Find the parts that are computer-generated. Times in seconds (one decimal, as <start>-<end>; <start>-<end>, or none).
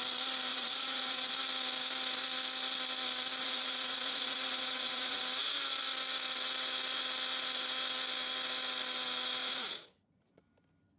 0.5-1.3; 3.4-5.2; 9.4-10.4